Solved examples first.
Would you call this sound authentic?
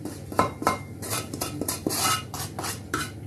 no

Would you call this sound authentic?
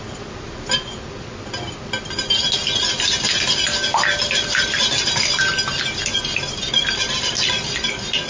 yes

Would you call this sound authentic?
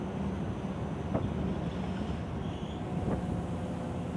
yes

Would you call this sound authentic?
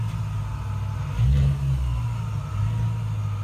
yes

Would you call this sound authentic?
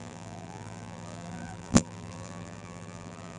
no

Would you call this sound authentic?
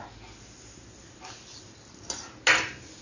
yes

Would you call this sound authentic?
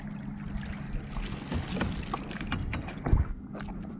yes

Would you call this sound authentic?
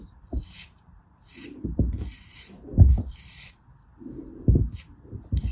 no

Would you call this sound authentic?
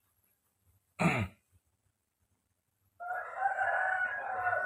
yes